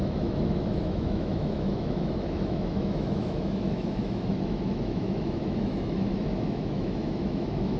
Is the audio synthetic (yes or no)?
yes